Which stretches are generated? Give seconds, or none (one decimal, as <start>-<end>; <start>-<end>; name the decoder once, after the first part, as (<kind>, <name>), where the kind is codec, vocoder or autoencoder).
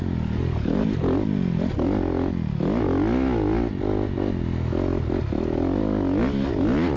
none